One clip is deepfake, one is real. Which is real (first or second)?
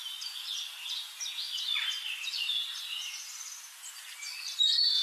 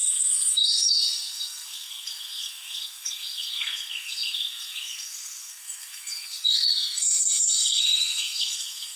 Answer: first